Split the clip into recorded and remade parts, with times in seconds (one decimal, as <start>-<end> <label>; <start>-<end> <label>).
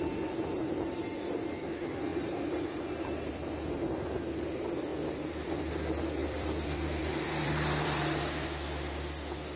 0.0-2.1 recorded; 2.1-4.4 remade; 4.4-6.2 recorded; 6.2-8.5 remade; 8.5-9.6 recorded